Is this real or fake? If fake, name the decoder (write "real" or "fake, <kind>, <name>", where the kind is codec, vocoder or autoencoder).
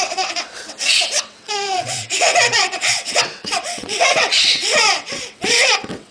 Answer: fake, vocoder, WaveNeXt